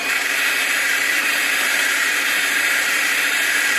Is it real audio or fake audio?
fake